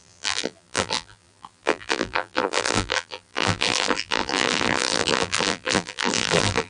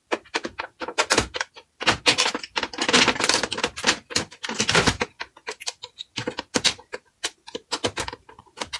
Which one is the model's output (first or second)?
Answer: first